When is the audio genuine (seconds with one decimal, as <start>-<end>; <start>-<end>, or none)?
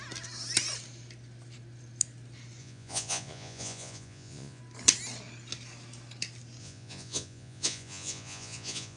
0.0-2.6; 4.6-6.6